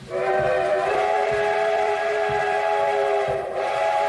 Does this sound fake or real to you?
fake